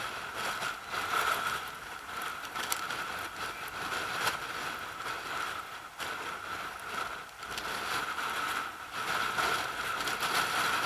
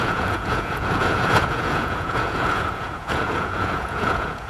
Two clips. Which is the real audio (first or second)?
first